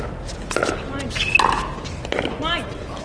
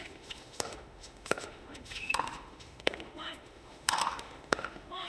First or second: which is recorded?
first